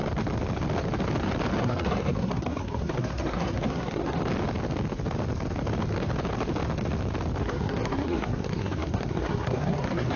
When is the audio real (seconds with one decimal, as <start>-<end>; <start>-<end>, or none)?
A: 0.0-1.6; 4.2-7.4

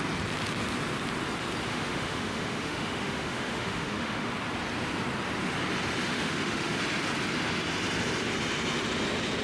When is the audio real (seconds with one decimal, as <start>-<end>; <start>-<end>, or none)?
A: 0.0-1.7; 4.3-6.0; 6.8-9.4

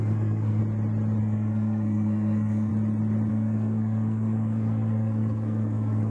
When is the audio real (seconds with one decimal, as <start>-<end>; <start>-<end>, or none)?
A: 0.6-1.2; 2.7-3.3

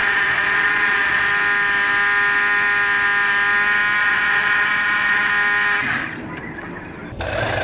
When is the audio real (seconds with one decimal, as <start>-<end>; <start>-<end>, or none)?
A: 1.3-4.0; 5.3-7.6

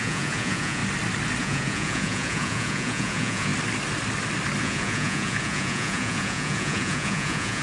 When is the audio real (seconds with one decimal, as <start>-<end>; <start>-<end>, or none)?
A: 0.8-1.4; 3.5-4.6

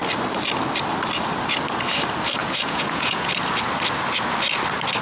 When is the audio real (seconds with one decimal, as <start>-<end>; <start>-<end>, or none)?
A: 0.0-2.4; 3.3-5.0

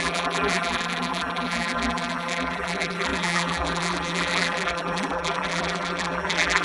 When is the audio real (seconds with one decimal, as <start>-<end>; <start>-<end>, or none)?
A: none

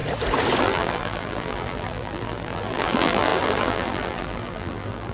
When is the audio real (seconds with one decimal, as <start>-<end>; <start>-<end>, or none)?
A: 0.0-0.6